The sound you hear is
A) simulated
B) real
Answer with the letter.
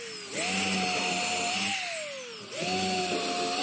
B